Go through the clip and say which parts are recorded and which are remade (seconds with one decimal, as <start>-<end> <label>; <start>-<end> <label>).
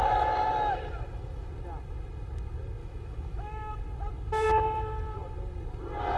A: 0.0-1.5 remade; 1.5-2.8 recorded; 2.8-3.8 remade; 3.8-6.2 recorded